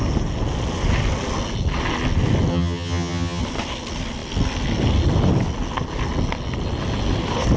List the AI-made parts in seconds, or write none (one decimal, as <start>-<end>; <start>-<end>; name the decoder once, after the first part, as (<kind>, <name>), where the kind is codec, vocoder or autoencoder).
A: 2.5-3.4 (vocoder, HiFi-GAN)